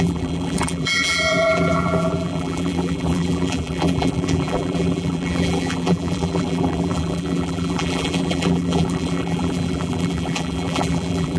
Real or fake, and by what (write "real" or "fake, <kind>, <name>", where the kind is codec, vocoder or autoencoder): fake, vocoder, BigVGAN v2